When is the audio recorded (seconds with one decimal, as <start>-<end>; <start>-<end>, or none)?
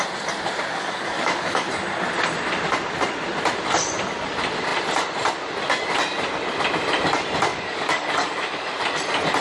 0.0-0.7; 1.7-7.5; 8.7-9.4